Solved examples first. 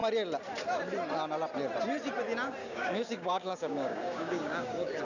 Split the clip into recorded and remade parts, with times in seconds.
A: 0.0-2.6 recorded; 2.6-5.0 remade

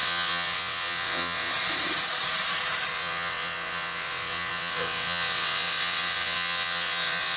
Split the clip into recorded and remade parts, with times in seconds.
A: 0.0-1.5 remade; 1.5-2.9 recorded; 2.9-7.4 remade